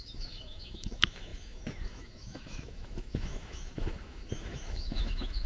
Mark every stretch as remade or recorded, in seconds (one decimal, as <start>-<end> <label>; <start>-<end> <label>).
0.0-5.5 remade